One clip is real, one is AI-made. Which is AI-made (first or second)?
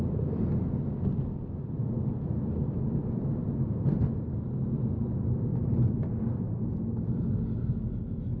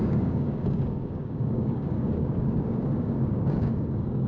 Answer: second